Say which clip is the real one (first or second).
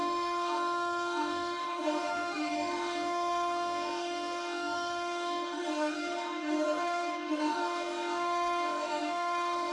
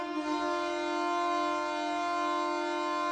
second